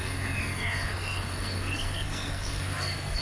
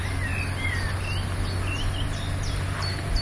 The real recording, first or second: second